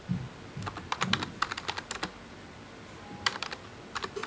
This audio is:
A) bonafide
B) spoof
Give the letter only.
A